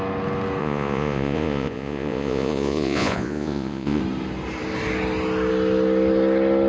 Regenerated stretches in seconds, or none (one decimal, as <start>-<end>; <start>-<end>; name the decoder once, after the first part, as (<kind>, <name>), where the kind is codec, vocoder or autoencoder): 0.6-4.0 (vocoder, Vocos)